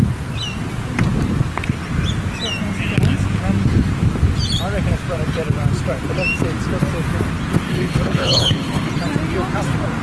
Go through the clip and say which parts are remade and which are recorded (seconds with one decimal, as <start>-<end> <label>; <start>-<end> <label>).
0.0-7.7 recorded; 7.7-8.9 remade; 8.9-10.0 recorded